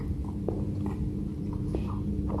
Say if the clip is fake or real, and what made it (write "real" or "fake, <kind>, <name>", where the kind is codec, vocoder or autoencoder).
real